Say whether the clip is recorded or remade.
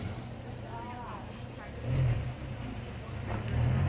recorded